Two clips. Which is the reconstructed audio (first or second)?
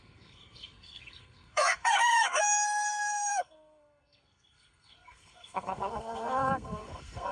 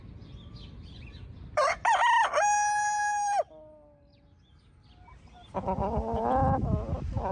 first